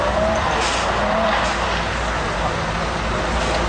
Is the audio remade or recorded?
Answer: recorded